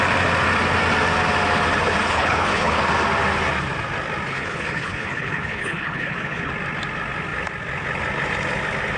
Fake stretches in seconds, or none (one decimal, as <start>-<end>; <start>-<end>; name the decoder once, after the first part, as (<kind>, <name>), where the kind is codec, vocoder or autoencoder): 2.0-2.8 (codec, HILCodec); 4.3-6.5